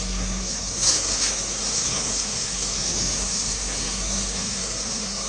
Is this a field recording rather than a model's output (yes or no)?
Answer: no